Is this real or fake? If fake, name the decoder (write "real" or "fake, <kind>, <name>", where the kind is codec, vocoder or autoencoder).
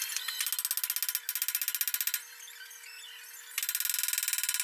real